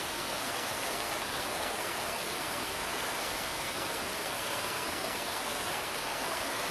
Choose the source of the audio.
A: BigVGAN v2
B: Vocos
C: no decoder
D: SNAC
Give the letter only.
D